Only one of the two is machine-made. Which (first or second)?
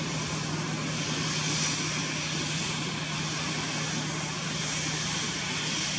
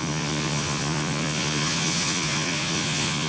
second